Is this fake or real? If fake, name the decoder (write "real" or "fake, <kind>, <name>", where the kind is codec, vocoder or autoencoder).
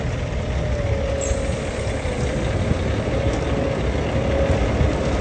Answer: real